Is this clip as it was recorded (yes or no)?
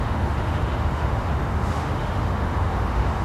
no